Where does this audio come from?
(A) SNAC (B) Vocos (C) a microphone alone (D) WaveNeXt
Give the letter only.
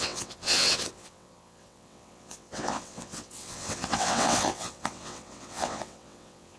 D